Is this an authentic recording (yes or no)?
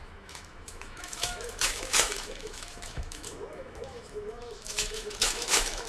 no